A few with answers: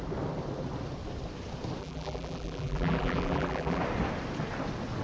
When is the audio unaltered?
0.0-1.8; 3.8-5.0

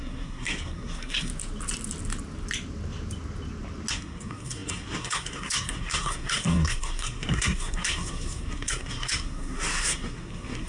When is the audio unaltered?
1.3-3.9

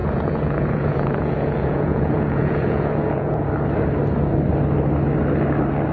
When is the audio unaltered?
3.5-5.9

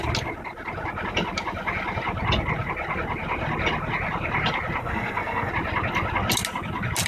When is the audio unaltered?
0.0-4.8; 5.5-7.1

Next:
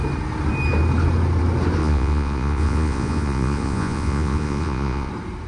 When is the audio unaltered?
0.0-1.8; 5.1-5.5